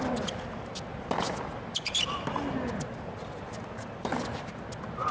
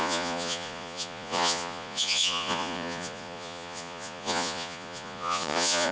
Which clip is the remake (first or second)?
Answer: second